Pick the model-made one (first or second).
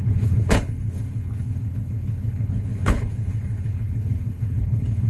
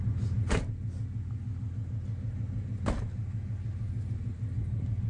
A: first